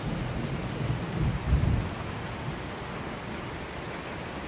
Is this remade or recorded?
recorded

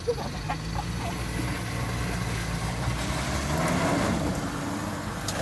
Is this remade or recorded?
recorded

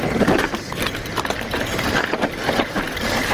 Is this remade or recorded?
recorded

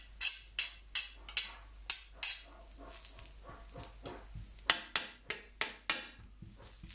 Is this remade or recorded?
recorded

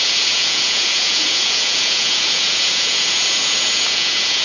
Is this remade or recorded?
remade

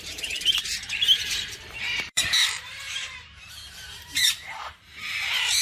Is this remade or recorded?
remade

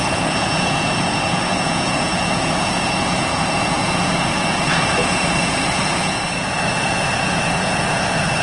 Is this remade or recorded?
remade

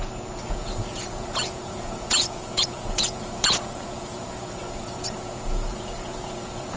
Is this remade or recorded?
remade